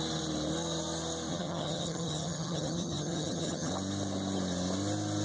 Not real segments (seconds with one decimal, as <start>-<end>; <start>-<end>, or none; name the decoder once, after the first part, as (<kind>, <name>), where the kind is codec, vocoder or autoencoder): 1.3-3.7 (vocoder, HiFi-GAN)